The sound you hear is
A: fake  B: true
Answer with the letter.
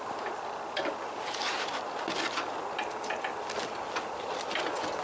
B